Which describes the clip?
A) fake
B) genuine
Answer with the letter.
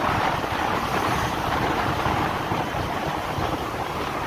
A